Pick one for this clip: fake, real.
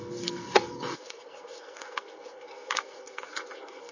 fake